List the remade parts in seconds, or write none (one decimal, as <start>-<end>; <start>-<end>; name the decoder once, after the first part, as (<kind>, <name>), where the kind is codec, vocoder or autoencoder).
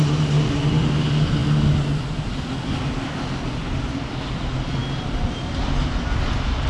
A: none